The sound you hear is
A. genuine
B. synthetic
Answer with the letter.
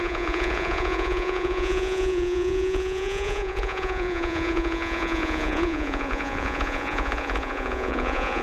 B